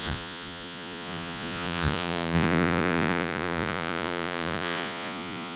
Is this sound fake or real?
fake